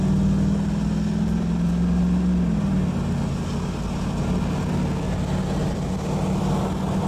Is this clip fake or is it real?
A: real